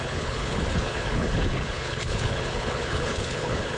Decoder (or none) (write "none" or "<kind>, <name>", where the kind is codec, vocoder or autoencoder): codec, HILCodec